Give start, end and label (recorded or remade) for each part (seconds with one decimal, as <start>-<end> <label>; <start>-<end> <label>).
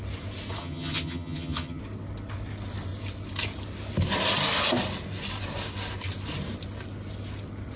0.0-0.6 recorded; 0.6-1.8 remade; 1.8-7.8 recorded